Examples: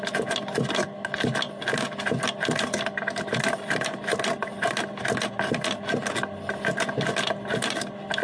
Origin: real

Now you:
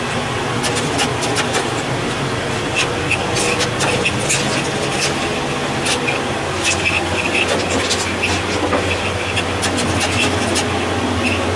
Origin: real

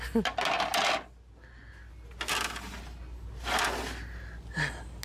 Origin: real